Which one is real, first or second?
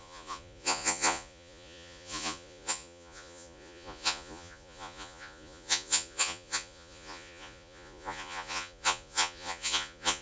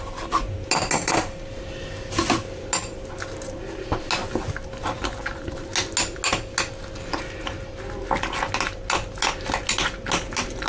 second